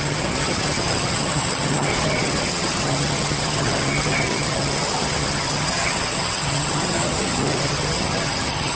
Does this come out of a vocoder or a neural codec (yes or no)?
yes